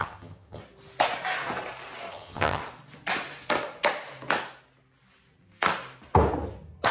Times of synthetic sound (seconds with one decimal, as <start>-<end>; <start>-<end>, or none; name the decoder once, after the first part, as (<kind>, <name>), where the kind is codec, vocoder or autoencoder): 0.0-0.6 (vocoder, HiFi-GAN); 2.1-2.6